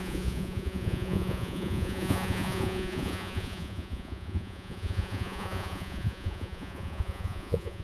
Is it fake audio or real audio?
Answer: fake